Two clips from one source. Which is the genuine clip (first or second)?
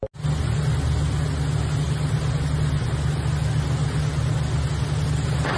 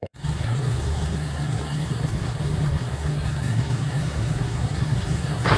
first